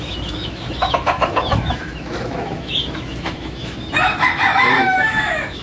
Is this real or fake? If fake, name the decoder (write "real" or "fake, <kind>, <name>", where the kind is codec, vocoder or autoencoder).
fake, autoencoder, DAC-VAE